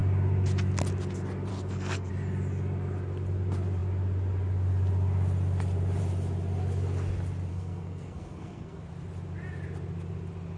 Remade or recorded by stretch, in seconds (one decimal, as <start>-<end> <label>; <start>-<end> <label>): 0.0-1.5 recorded; 1.5-2.1 remade; 2.1-7.5 recorded; 7.5-8.8 remade; 8.8-10.6 recorded